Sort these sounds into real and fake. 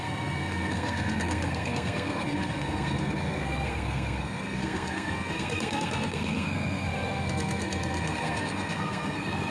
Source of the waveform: fake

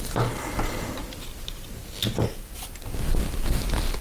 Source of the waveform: real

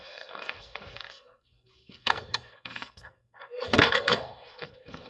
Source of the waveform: fake